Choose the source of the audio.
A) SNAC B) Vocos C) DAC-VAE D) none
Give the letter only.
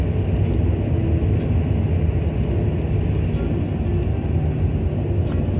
D